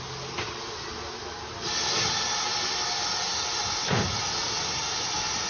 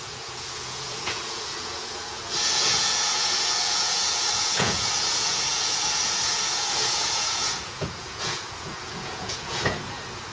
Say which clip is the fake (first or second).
second